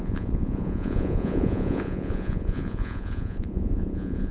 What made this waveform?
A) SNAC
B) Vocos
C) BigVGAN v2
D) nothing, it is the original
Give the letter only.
B